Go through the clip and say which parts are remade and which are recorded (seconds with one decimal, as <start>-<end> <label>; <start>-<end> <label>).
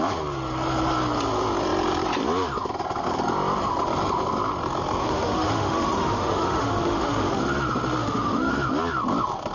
0.0-5.0 recorded; 5.0-7.4 remade; 7.4-8.0 recorded; 8.0-8.5 remade; 8.5-9.5 recorded